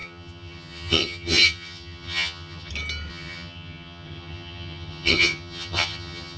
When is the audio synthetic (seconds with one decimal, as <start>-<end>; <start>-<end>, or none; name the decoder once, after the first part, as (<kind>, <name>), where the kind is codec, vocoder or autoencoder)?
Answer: 0.0-2.7 (vocoder, HiFi-GAN); 3.1-6.4

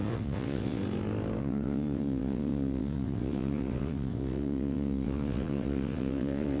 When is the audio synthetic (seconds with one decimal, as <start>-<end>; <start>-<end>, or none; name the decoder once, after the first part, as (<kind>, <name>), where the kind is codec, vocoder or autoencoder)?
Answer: 0.0-0.8 (vocoder, WaveNeXt); 1.4-6.6

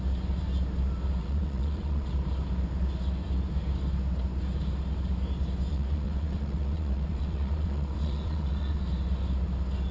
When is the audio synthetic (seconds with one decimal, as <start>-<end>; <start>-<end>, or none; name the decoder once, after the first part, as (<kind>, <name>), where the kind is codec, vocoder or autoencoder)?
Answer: 1.2-2.1 (vocoder, WaveNeXt); 5.7-8.8

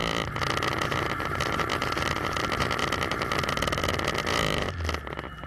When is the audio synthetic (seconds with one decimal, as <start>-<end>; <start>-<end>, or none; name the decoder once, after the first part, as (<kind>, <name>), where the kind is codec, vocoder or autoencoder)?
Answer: none